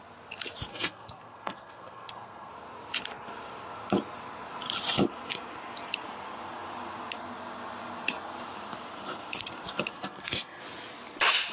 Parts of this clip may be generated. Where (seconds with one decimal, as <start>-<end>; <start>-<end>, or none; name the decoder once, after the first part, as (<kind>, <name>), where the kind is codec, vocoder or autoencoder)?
0.7-2.5 (codec, SNAC); 9.9-10.6